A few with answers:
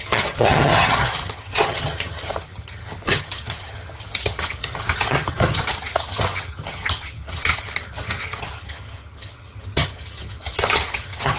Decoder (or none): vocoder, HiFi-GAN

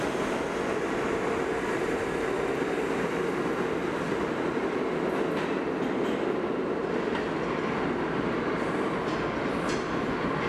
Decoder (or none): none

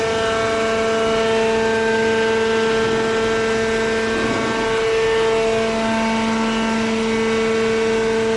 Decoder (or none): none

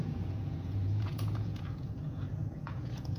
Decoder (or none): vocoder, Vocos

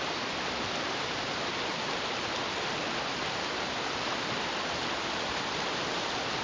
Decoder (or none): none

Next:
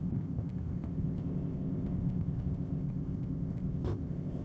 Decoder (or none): codec, ZipCodec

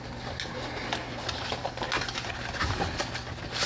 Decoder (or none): none